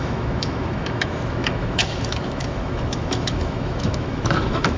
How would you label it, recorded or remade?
remade